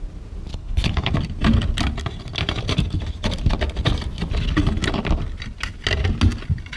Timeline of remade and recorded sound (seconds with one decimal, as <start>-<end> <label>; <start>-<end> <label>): 0.0-0.5 recorded; 0.5-1.1 remade; 1.1-6.8 recorded